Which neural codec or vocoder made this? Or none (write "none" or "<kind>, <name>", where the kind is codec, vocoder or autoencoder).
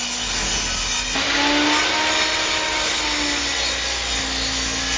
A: none